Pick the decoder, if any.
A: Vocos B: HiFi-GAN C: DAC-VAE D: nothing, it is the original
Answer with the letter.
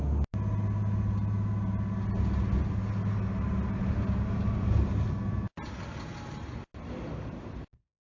D